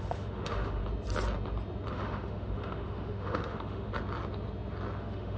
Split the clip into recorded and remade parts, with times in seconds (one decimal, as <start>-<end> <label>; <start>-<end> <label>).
0.0-0.8 remade; 0.8-1.9 recorded; 1.9-3.9 remade; 3.9-5.0 recorded; 5.0-5.4 remade